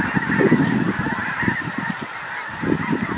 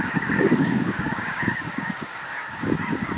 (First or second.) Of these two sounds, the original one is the first